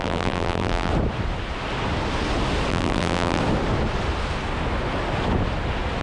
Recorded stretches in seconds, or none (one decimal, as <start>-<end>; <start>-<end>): 0.9-2.7; 3.4-6.0